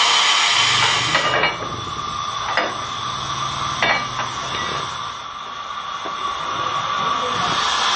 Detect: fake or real real